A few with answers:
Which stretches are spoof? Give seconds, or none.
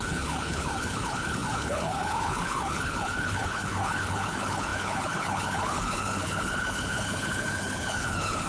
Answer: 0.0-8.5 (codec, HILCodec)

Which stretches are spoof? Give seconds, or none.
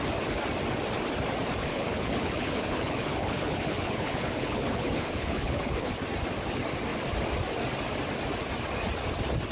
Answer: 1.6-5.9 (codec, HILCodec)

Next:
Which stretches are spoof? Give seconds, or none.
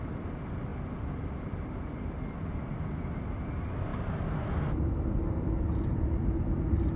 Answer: none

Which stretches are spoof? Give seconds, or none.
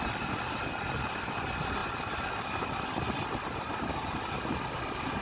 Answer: none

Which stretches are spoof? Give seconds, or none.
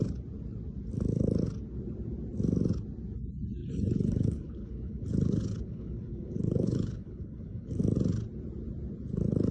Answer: 3.6-7.8 (codec, HILCodec)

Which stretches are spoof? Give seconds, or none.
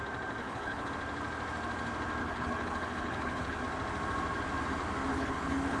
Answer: 0.4-0.9 (codec, HILCodec); 2.2-3.6; 5.1-5.8